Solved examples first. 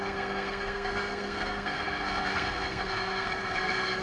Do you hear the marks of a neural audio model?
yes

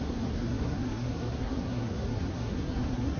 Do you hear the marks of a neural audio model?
yes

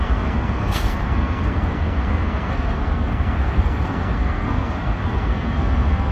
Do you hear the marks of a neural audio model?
yes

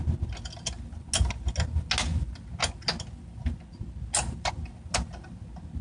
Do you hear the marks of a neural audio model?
no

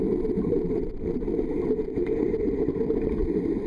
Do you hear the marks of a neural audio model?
no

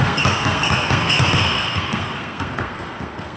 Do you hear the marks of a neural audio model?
yes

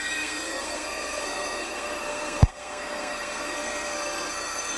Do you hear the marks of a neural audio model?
yes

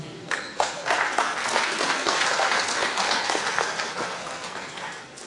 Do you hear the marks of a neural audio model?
yes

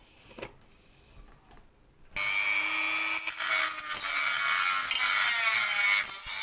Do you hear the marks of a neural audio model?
no